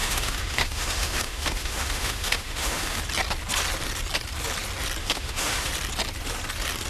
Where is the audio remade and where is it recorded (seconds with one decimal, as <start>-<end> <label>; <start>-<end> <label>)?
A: 0.0-3.0 remade; 3.0-5.0 recorded; 5.0-5.7 remade; 5.7-6.9 recorded